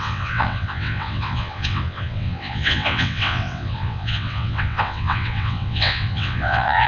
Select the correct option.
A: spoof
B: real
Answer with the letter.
A